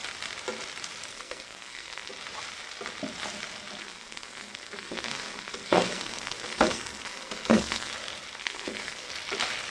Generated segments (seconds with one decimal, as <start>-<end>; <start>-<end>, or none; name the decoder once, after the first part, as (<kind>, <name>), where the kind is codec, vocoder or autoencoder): 1.1-2.1 (codec, SNAC); 3.8-7.9; 8.4-9.1